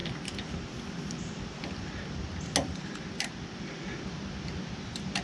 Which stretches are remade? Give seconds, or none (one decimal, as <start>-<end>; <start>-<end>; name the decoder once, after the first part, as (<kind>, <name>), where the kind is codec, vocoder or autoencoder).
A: none